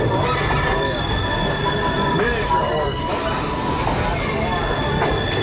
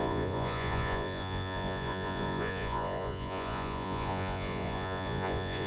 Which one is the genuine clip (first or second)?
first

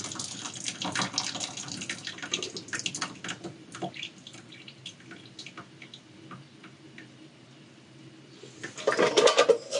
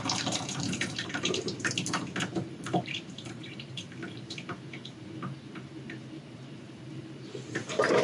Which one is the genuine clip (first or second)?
first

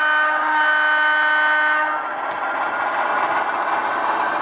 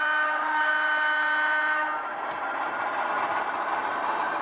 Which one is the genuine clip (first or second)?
first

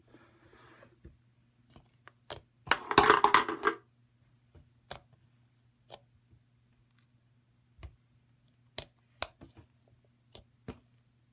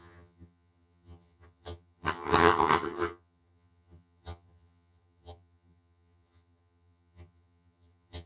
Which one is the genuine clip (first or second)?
first